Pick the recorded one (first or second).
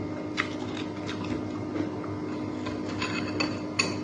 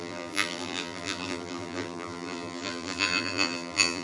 first